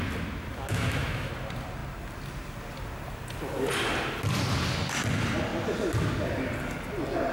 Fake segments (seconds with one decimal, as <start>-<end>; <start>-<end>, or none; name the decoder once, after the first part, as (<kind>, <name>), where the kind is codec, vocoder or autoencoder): 0.7-1.3 (autoencoder, DAC-VAE)